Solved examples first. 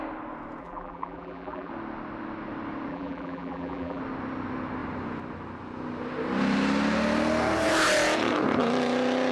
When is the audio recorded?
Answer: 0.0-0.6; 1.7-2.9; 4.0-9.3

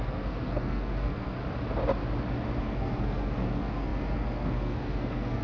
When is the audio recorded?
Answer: 1.4-2.6

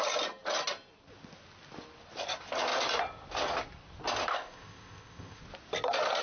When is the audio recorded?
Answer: 0.0-4.3; 5.4-6.2

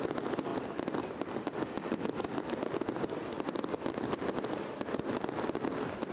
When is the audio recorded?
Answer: 0.0-6.1